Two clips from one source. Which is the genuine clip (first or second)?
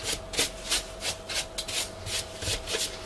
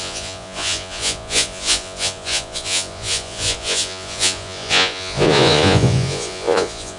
first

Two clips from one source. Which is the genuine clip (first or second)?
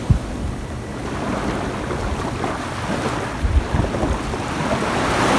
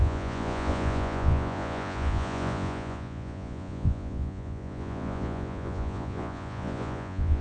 first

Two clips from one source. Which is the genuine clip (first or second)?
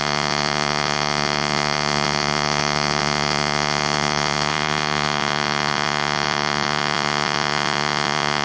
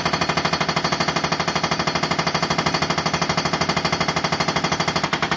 second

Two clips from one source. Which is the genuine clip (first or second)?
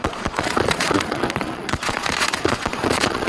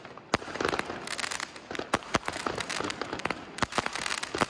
second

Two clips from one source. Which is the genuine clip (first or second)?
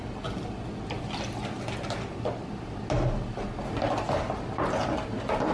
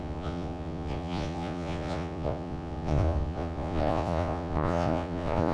first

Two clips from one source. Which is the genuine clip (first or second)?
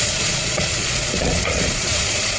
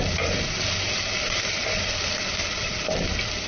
second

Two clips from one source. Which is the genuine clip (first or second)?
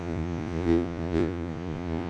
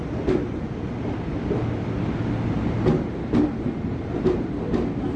second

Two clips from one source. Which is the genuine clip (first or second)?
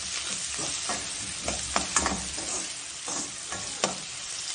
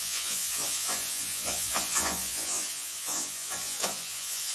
first